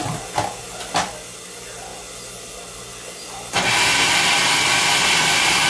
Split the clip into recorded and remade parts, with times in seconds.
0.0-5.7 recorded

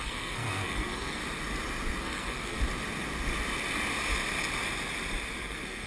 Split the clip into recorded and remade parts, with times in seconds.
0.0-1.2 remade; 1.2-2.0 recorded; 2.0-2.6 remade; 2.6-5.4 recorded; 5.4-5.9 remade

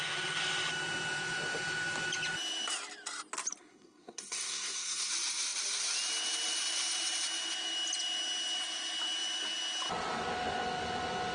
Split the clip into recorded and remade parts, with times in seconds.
0.0-3.6 recorded; 3.6-5.1 remade; 5.1-11.3 recorded

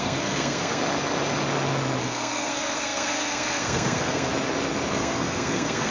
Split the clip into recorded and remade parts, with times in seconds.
0.0-0.8 remade; 0.8-2.0 recorded; 2.0-4.3 remade; 4.3-4.9 recorded; 4.9-5.9 remade